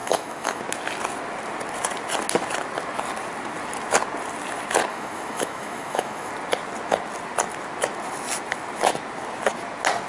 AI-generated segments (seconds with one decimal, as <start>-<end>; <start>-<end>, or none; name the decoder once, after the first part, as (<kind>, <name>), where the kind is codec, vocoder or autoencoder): 0.0-0.6 (autoencoder, DAC-VAE); 4.9-6.3